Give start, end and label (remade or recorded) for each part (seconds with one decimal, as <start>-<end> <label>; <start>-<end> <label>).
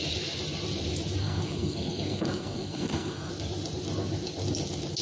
0.0-1.2 recorded; 1.2-3.3 remade; 3.3-5.0 recorded